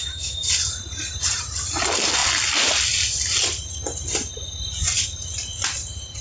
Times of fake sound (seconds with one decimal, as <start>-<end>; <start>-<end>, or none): 0.0-0.5